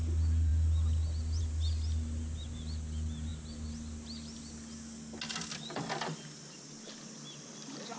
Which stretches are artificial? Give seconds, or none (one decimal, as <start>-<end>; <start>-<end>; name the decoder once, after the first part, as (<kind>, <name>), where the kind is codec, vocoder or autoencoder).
none

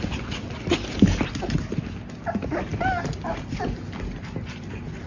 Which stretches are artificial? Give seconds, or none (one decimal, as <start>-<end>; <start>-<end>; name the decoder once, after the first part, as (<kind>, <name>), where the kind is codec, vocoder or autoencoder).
none